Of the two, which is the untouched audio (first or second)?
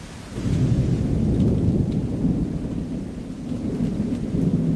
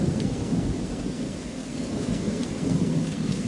first